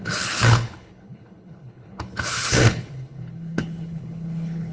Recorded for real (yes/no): no